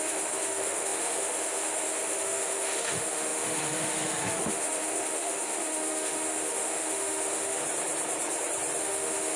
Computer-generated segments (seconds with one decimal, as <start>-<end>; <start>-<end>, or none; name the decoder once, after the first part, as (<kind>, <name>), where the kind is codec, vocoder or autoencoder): 0.0-7.6 (autoencoder, DAC-VAE); 8.8-9.4